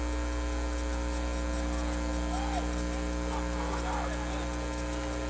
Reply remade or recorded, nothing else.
recorded